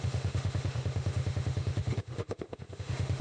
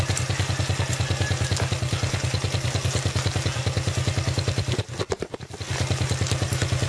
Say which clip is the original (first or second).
second